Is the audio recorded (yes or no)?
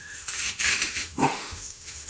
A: no